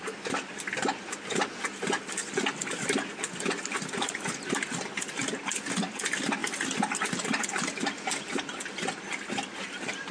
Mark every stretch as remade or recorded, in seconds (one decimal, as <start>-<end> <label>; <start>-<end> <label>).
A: 0.0-10.1 recorded